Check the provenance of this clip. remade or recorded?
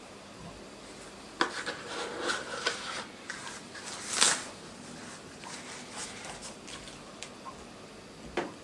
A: recorded